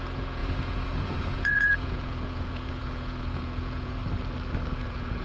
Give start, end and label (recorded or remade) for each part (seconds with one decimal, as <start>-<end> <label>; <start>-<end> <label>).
0.0-4.0 remade; 4.0-4.7 recorded; 4.7-5.2 remade

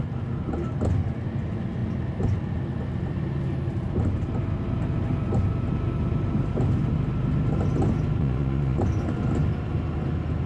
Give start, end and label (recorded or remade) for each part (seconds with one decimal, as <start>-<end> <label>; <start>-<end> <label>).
0.0-8.2 recorded; 8.2-8.8 remade; 8.8-10.5 recorded

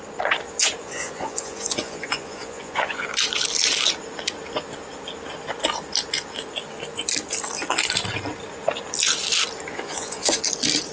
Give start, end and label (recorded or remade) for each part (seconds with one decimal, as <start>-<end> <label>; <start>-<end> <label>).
0.0-0.8 recorded; 0.8-3.1 remade; 3.1-9.7 recorded; 9.7-10.4 remade; 10.4-10.9 recorded

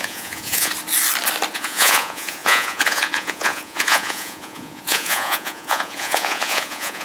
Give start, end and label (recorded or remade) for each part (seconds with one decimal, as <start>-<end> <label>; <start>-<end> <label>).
0.0-0.7 remade; 0.7-1.5 recorded; 1.5-7.0 remade

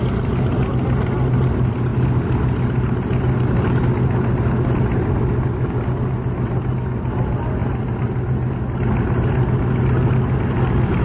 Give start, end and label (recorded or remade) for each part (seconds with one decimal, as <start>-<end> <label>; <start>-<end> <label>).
0.0-11.0 recorded

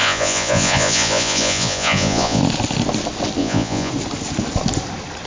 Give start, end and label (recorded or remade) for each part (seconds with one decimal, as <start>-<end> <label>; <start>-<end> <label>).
0.0-2.4 remade; 2.4-3.4 recorded; 3.4-3.9 remade; 3.9-5.3 recorded

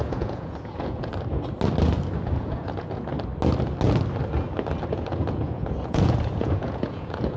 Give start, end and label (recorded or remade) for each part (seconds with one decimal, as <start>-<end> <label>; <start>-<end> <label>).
0.0-1.1 remade; 1.1-2.4 recorded; 2.4-3.1 remade; 3.1-4.9 recorded; 4.9-7.4 remade